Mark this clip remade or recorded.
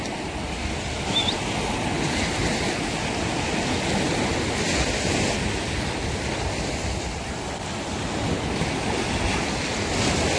recorded